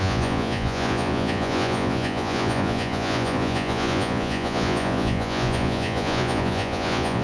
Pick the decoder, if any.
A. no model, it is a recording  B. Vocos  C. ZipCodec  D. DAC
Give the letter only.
B